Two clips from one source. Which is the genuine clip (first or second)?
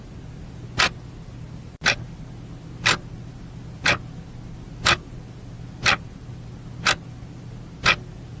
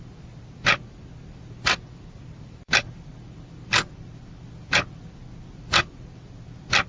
first